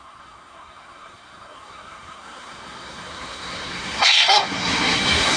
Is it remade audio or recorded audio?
remade